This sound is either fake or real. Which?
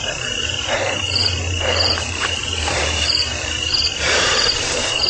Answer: fake